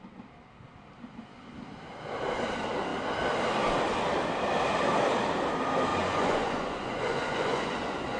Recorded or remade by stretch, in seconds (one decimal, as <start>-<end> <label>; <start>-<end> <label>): 0.0-5.9 recorded; 5.9-8.2 remade